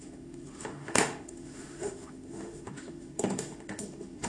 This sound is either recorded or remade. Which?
remade